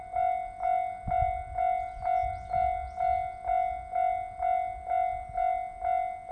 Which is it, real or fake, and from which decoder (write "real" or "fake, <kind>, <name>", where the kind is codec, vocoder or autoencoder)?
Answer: real